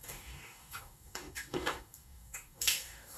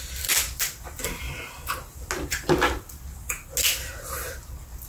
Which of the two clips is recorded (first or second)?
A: second